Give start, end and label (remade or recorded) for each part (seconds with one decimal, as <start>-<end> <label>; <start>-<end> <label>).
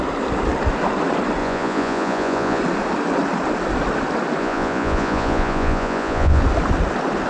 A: 0.0-1.4 recorded; 1.4-2.6 remade; 2.6-4.4 recorded; 4.4-6.4 remade; 6.4-7.3 recorded